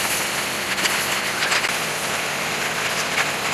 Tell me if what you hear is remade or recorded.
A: recorded